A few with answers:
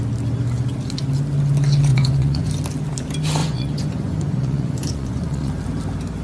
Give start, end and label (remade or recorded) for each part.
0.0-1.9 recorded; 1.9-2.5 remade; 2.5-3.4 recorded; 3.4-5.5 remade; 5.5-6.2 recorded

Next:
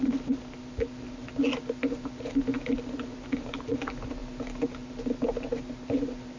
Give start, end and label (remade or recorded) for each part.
0.0-6.4 recorded

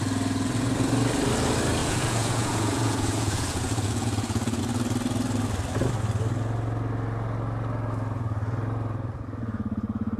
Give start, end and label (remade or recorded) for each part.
0.0-1.8 recorded; 1.8-4.6 remade; 4.6-10.2 recorded

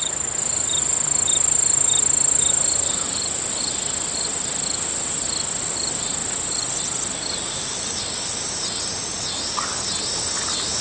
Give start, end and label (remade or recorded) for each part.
0.0-10.8 recorded

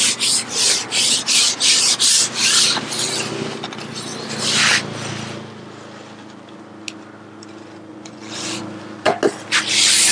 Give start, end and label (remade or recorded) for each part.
0.0-7.9 recorded; 7.9-8.6 remade; 8.6-10.1 recorded

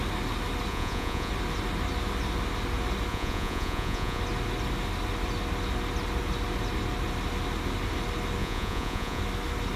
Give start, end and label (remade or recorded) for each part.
0.0-0.7 recorded; 0.7-1.3 remade; 1.3-3.1 recorded; 3.1-4.2 remade; 4.2-8.4 recorded; 8.4-9.2 remade; 9.2-9.8 recorded

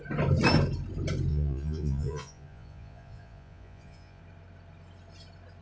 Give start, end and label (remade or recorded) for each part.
0.0-1.3 recorded; 1.3-4.2 remade; 4.2-5.6 recorded

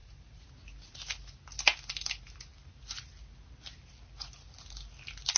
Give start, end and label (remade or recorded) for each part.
0.0-0.5 remade; 0.5-5.4 recorded